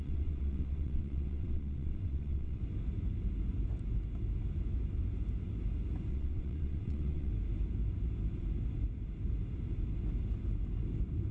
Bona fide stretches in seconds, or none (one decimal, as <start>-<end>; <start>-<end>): 2.6-6.1; 7.3-11.3